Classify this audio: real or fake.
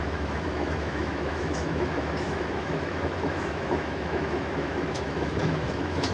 fake